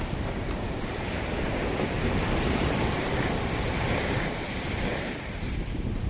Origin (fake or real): fake